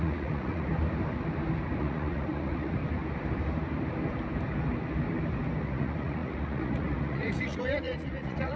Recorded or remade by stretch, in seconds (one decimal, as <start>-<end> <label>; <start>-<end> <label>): 0.0-0.7 remade; 0.7-1.8 recorded; 1.8-2.8 remade; 2.8-5.6 recorded; 5.6-8.6 remade